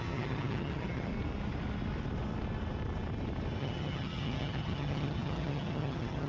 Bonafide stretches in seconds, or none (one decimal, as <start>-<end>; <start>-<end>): 1.1-3.6